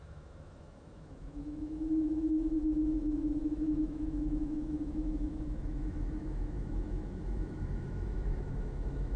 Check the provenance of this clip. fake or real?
fake